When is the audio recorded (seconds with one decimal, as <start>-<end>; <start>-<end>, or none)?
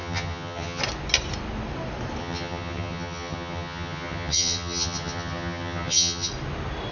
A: 0.8-2.2; 6.3-6.9